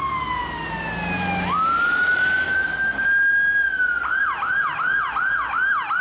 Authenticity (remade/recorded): recorded